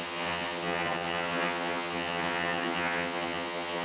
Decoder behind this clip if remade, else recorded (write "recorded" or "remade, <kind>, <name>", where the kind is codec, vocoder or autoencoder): remade, vocoder, HiFi-GAN